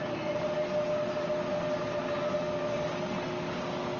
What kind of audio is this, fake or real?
real